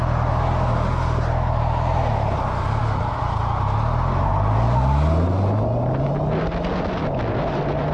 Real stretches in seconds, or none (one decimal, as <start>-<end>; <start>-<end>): 0.0-7.9